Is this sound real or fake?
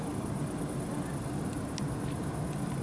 real